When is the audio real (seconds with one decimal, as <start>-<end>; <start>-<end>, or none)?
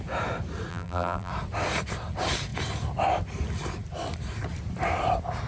0.0-0.7; 1.3-5.5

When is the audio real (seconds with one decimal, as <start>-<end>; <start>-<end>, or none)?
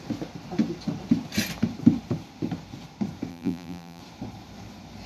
0.0-3.3; 4.0-5.1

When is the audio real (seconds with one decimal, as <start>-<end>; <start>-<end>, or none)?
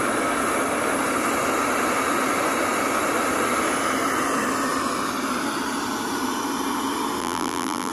0.0-7.2